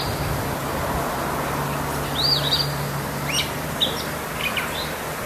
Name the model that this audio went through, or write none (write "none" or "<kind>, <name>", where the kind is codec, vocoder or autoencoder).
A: none